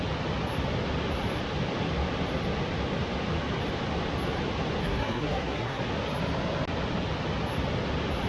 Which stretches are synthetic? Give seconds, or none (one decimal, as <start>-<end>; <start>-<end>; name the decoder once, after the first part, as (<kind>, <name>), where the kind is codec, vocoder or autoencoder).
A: 4.8-5.8 (codec, SNAC)